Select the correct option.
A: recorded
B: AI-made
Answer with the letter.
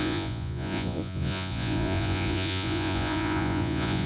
B